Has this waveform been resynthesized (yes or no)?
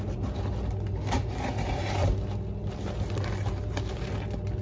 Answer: no